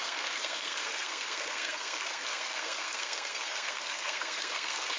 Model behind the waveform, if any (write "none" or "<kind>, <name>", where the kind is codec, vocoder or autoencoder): codec, SNAC